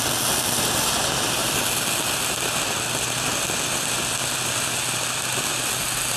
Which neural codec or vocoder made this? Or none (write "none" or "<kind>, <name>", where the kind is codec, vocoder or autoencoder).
none